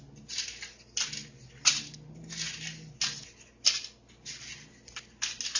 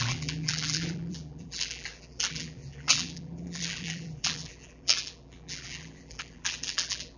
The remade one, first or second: second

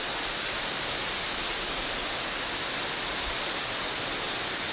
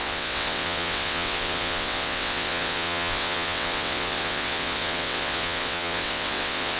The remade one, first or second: second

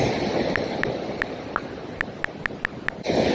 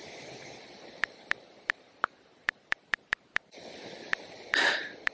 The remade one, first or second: second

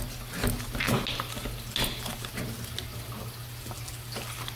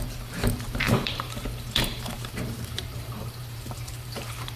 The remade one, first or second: second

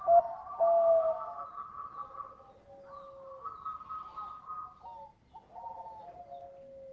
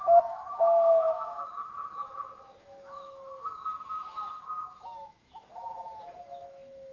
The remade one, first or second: second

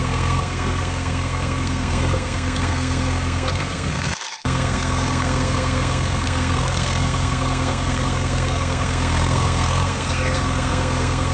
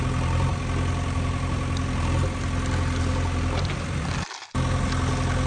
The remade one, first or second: first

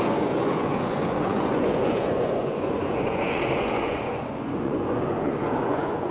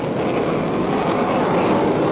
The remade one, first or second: first